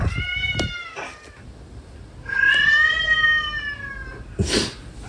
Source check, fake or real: real